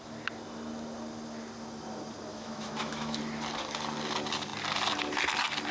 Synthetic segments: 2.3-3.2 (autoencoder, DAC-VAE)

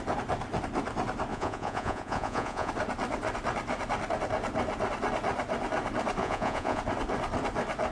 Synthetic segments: 1.3-2.7 (vocoder, Vocos); 6.2-6.8

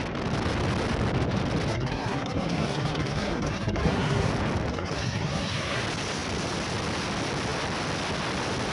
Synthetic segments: 1.7-4.3 (codec, SNAC); 4.7-5.8

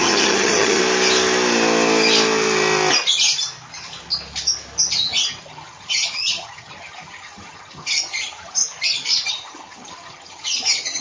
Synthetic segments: 0.0-0.8 (vocoder, HiFi-GAN); 5.4-8.6; 9.3-11.0

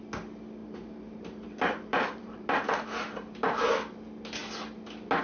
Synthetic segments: 0.6-3.7 (vocoder, BigVGAN v2)